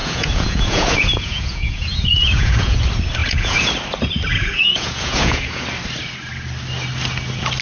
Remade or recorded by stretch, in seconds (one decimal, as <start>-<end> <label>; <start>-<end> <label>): 0.0-2.8 remade; 2.8-3.2 recorded; 3.2-3.7 remade; 3.7-4.3 recorded; 4.3-5.6 remade; 5.6-7.6 recorded